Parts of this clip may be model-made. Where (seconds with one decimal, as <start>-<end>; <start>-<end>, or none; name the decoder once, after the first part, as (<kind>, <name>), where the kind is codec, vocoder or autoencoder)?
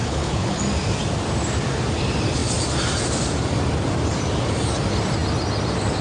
0.0-0.6 (codec, HILCodec)